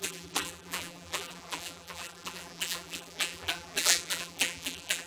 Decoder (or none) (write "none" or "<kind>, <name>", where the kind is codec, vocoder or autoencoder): vocoder, BigVGAN v2